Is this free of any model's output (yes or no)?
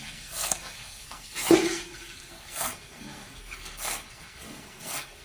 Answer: no